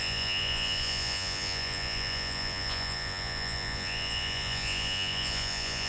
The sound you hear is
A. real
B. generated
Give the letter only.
B